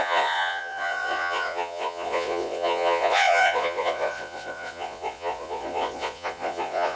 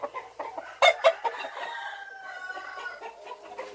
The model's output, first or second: first